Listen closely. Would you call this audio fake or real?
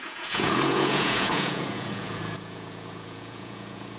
fake